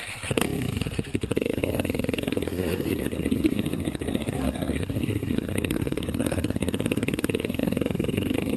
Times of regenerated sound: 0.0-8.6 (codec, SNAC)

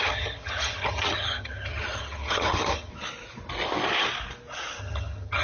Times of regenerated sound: 0.0-2.9 (vocoder, HiFi-GAN); 4.8-5.4

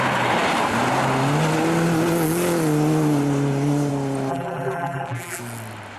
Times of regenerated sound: 4.3-5.4 (vocoder, BigVGAN v2)

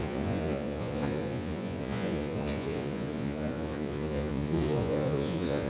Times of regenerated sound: 0.0-5.7 (vocoder, Vocos)

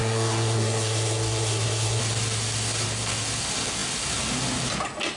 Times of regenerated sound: 0.0-2.0 (codec, SNAC)

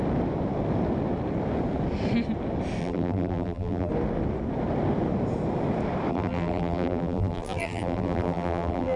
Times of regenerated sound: 2.8-3.9 (vocoder, BigVGAN v2); 6.1-9.0